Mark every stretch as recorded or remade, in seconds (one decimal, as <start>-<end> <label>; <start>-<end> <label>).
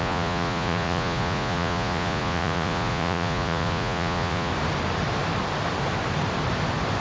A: 0.0-4.5 remade; 4.5-7.0 recorded